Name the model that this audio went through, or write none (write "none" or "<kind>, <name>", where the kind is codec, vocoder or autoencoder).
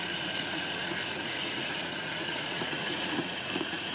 vocoder, Vocos